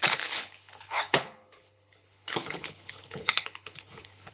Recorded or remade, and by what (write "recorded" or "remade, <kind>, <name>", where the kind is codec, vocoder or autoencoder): remade, codec, HILCodec